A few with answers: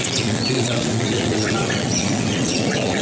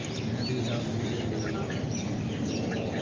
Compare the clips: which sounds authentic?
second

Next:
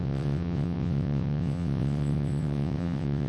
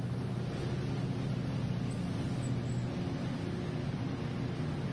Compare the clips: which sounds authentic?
second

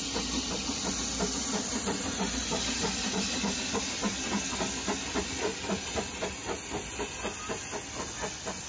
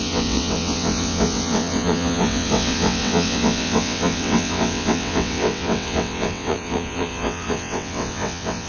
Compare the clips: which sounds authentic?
first